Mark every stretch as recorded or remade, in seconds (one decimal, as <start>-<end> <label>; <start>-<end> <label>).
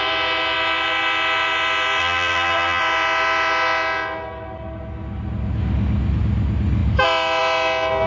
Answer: 0.0-2.0 recorded; 2.0-2.8 remade; 2.8-8.1 recorded